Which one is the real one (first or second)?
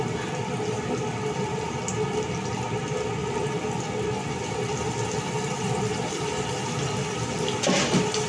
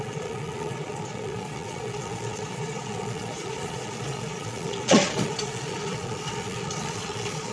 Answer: first